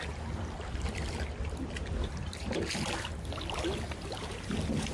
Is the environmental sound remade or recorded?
recorded